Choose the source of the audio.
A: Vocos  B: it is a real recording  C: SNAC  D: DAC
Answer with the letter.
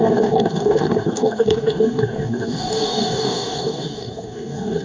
D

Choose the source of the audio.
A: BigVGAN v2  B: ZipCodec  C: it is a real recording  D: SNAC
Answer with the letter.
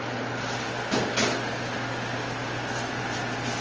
C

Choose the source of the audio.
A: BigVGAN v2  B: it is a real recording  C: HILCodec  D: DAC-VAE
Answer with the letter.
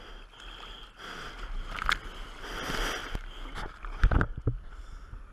B